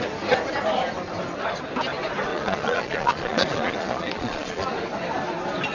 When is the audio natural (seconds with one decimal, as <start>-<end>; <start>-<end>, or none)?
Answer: 0.0-2.3; 4.7-5.7